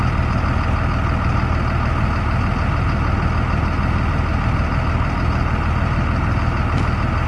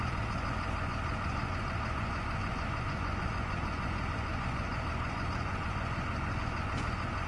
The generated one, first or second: second